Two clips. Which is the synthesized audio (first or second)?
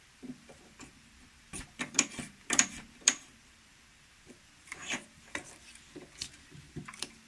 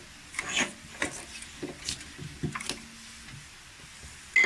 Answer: first